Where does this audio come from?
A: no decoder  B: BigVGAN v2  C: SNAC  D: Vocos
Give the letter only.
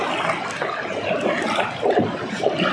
A